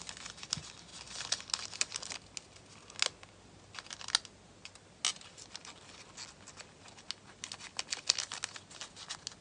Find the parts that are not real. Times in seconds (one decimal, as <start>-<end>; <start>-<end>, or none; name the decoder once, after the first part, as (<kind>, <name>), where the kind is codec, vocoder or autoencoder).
none